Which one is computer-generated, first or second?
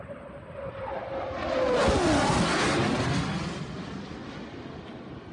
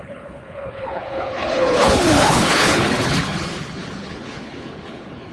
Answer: second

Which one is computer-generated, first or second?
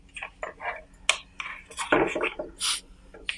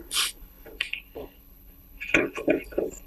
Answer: second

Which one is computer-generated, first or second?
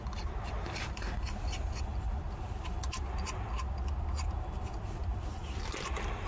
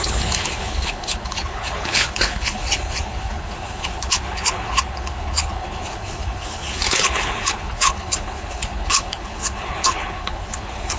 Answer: second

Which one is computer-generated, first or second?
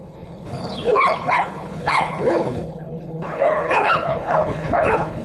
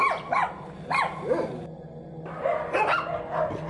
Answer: first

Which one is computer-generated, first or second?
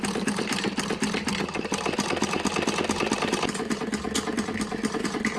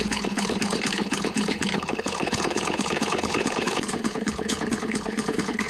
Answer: second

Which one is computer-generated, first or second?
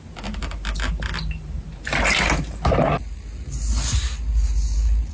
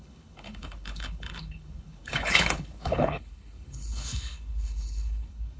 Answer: second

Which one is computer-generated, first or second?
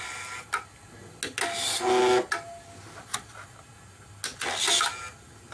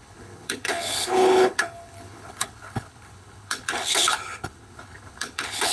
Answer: second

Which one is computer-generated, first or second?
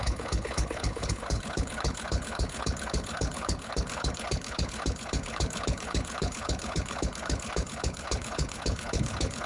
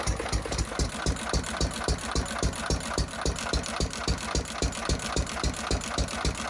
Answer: first